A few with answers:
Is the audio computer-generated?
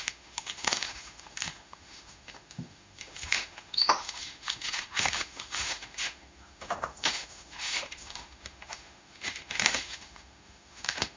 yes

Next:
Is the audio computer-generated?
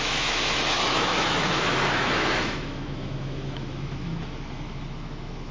yes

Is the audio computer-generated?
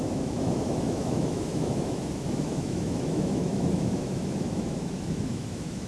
yes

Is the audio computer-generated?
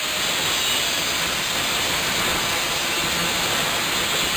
no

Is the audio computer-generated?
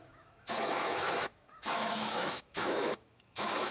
yes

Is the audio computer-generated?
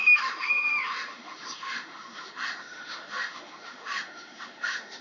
yes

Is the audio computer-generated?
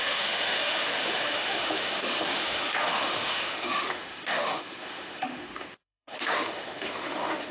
yes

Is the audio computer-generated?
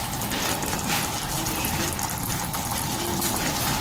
no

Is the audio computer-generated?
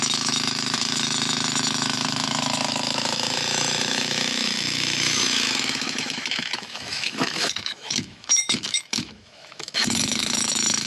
yes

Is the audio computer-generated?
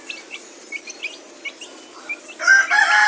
no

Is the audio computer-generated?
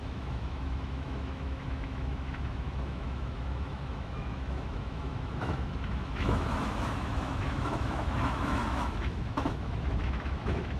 yes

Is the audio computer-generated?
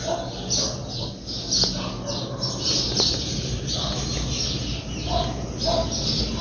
no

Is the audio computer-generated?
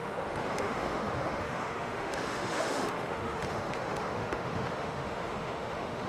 yes